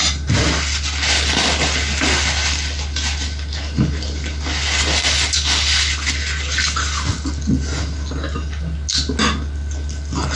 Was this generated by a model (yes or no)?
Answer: no